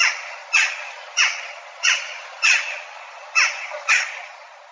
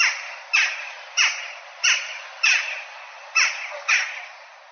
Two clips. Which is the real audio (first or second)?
second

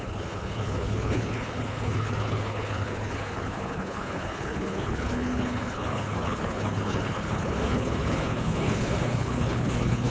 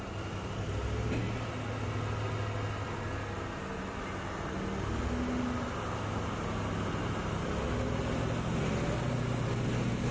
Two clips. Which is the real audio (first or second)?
second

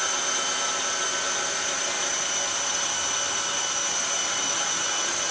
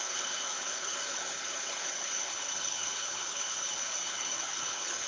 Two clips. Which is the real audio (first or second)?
first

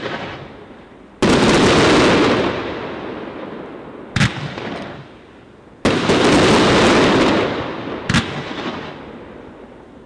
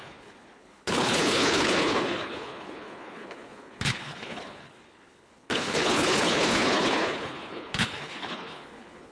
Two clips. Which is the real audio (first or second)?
first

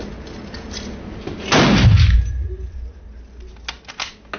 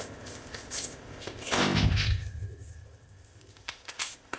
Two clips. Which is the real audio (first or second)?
first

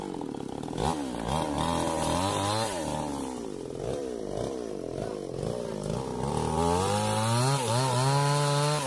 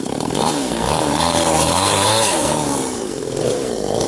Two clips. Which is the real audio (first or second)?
first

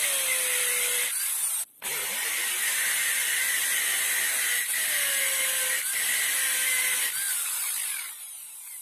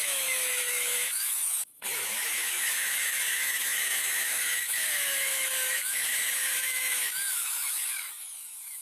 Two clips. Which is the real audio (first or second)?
first